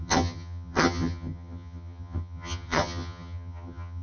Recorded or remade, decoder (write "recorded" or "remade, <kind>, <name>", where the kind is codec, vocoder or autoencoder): remade, vocoder, HiFi-GAN